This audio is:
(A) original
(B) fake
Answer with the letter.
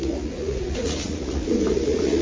B